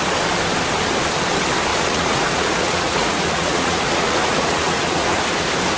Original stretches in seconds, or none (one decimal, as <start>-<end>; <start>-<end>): 0.0-1.7; 5.2-5.8